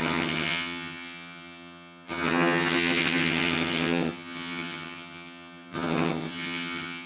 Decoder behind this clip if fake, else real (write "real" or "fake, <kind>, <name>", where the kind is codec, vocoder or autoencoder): fake, vocoder, HiFi-GAN